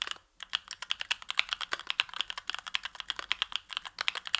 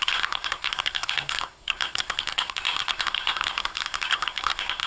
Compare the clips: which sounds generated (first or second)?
second